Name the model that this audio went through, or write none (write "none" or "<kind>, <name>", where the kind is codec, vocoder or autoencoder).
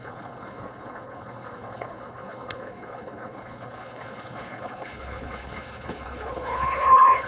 codec, HILCodec